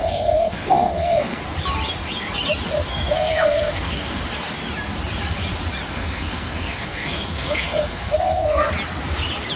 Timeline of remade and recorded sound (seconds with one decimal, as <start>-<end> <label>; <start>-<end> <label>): 0.0-1.4 remade; 1.4-2.9 recorded; 2.9-4.2 remade; 4.2-5.9 recorded; 5.9-8.7 remade; 8.7-9.6 recorded